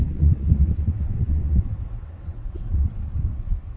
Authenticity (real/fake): fake